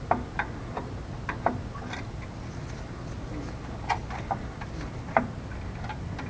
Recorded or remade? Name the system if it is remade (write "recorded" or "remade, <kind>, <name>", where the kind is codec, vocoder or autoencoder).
recorded